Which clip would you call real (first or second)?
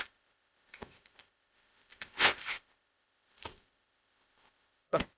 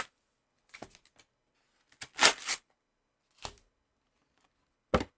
second